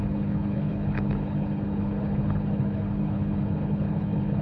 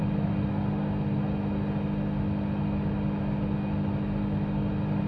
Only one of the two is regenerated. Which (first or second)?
first